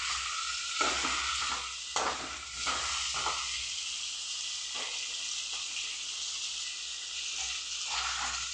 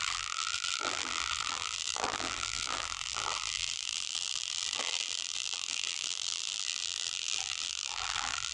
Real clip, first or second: first